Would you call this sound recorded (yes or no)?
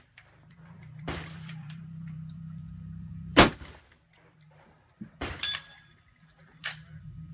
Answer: no